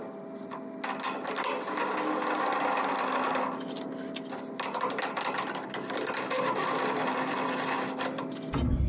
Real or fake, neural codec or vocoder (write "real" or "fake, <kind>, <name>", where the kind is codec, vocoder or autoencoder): real